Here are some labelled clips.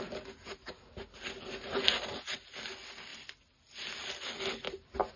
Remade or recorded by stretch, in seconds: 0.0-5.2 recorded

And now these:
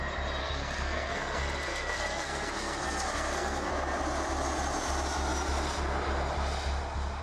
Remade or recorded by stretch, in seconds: 0.0-0.4 recorded; 0.4-3.7 remade; 3.7-7.2 recorded

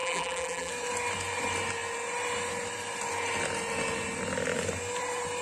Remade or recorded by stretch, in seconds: 0.0-0.7 remade; 0.7-5.4 recorded

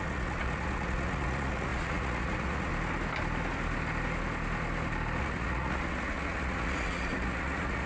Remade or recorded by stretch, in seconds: 0.0-2.7 remade; 2.7-5.2 recorded; 5.2-7.9 remade

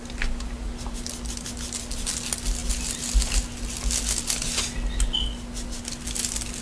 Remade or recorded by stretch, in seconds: 0.0-6.6 recorded

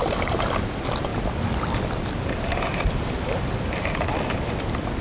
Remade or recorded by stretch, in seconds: 0.0-5.0 recorded

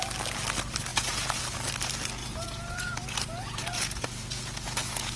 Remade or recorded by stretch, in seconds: 0.0-0.9 recorded; 0.9-1.4 remade; 1.4-2.2 recorded; 2.2-5.2 remade